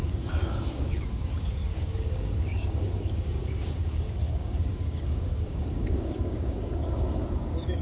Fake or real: fake